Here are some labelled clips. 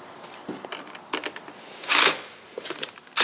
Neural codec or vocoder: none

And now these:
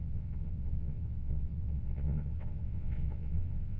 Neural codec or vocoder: vocoder, WaveNeXt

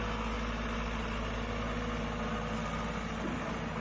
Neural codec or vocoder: none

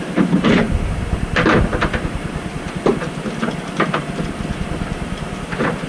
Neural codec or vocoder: vocoder, BigVGAN v2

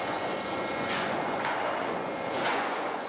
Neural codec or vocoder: vocoder, Vocos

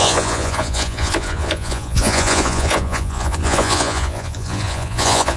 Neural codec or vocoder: vocoder, Vocos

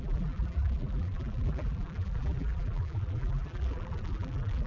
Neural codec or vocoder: vocoder, BigVGAN v2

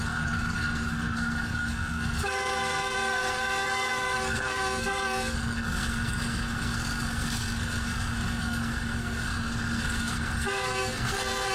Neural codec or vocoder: codec, SNAC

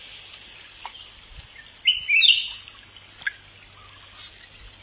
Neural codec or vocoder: none